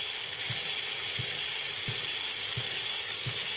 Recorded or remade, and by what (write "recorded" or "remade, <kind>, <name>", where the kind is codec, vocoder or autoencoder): remade, vocoder, BigVGAN v2